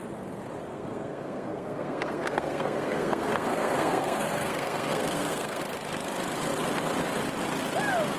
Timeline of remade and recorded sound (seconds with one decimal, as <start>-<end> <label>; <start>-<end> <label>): 0.0-0.7 recorded; 0.7-5.6 remade; 5.6-8.2 recorded